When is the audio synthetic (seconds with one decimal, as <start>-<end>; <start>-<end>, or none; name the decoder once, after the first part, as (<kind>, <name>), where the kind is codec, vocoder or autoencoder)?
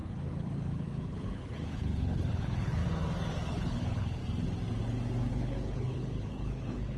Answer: 0.0-2.8 (codec, HILCodec); 3.5-4.2; 5.3-7.0